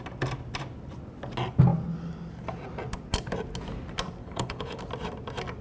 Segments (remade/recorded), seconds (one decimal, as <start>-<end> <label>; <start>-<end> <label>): 0.0-4.2 recorded; 4.2-4.8 remade; 4.8-5.6 recorded